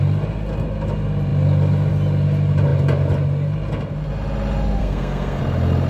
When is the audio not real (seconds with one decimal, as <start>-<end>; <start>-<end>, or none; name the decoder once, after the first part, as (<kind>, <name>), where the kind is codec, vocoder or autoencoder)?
4.8-5.4 (codec, SNAC)